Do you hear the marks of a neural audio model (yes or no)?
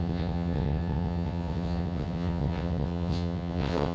yes